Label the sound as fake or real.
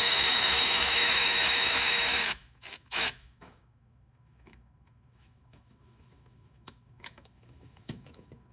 fake